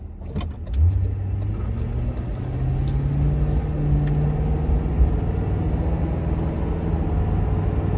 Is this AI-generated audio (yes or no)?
no